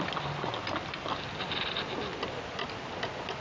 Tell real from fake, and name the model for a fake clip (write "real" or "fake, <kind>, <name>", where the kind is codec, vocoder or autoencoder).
real